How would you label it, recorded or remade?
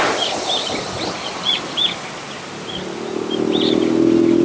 recorded